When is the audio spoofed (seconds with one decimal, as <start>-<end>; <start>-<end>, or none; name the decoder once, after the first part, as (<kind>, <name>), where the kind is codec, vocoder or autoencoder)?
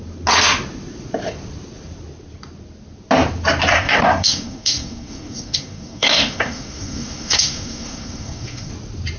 3.7-8.7 (codec, SNAC)